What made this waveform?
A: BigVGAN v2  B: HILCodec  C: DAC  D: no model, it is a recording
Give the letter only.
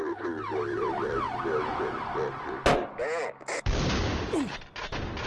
D